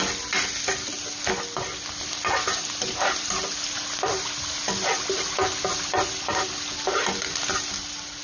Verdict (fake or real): real